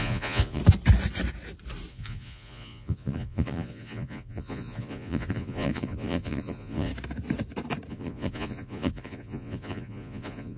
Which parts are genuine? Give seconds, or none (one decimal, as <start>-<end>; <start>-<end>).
0.6-1.9; 6.9-7.9